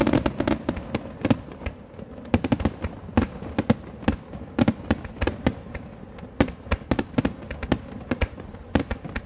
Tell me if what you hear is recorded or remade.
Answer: recorded